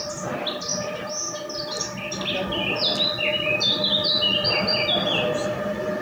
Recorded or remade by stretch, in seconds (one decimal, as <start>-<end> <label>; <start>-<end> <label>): 0.0-6.0 recorded